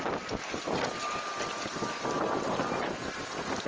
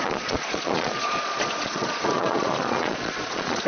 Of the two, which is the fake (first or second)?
second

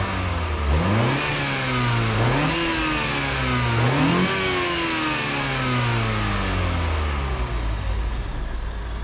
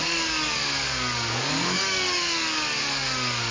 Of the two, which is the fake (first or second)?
second